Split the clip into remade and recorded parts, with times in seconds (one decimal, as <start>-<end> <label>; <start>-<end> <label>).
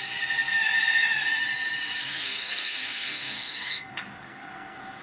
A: 0.0-2.0 recorded; 2.0-5.0 remade